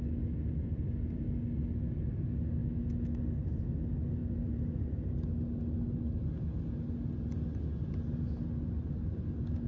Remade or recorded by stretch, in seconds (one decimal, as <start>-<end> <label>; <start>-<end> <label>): 0.0-2.6 recorded; 2.6-3.2 remade; 3.2-9.7 recorded